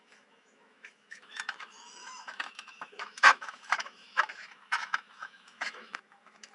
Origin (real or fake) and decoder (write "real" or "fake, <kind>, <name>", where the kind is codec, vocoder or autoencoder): fake, autoencoder, DAC-VAE